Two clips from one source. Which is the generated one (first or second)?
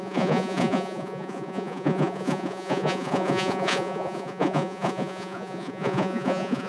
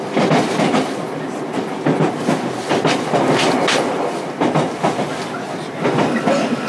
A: first